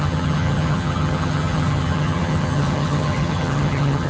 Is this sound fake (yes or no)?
yes